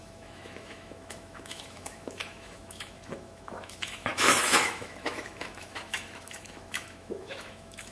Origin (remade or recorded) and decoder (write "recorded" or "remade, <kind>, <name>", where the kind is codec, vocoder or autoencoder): remade, autoencoder, DAC-VAE